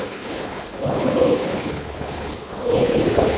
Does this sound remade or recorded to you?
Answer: remade